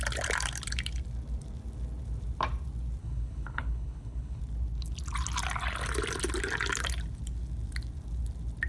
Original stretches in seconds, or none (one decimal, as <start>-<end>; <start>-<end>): 0.0-3.0; 4.4-8.7